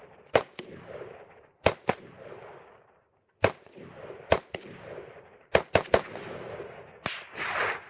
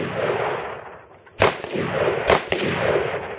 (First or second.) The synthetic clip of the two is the first